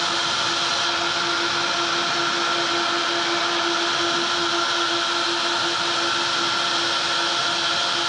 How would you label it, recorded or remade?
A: recorded